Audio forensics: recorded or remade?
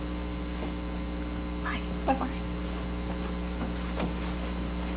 recorded